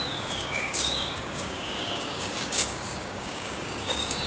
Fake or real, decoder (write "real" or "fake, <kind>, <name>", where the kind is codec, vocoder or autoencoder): fake, codec, DAC